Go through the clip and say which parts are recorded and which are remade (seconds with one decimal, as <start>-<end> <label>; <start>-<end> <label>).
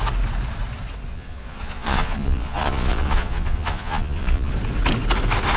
0.0-1.1 recorded; 1.1-4.5 remade; 4.5-5.6 recorded